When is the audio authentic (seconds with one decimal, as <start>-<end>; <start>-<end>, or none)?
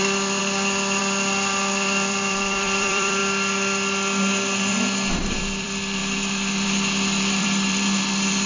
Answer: 3.2-5.3